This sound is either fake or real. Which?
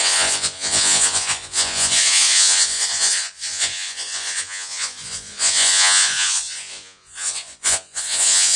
fake